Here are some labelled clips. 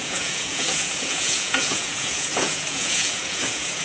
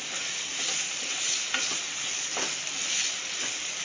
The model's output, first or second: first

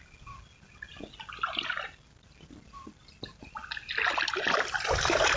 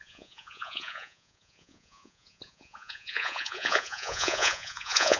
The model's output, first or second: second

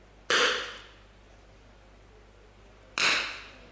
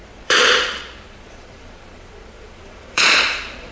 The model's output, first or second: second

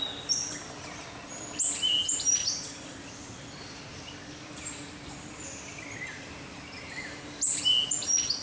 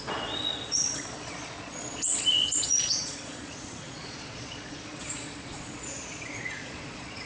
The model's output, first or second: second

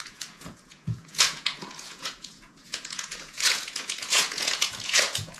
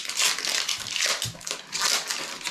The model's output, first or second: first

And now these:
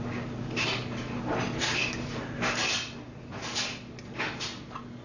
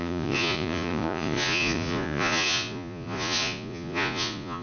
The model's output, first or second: second